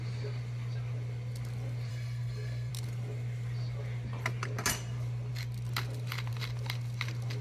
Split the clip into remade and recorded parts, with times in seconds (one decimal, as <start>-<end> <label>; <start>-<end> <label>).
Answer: 0.0-1.9 recorded; 1.9-2.7 remade; 2.7-7.4 recorded